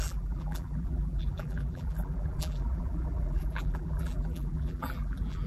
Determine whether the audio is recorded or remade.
remade